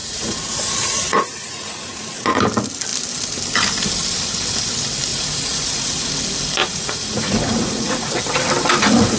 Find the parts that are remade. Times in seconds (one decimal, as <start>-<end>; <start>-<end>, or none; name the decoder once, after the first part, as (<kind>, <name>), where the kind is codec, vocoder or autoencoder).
0.0-2.4 (vocoder, Vocos); 5.1-6.1; 6.6-8.2